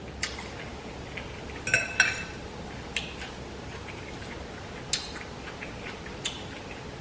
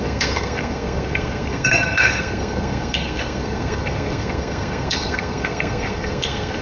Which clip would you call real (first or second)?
first